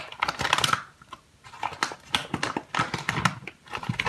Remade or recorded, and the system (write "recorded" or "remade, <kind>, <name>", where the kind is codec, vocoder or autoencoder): recorded